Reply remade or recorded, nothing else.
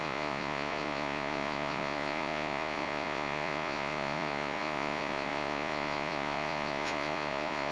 remade